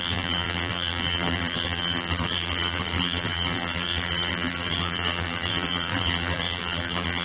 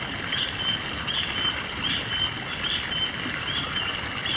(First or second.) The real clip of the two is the second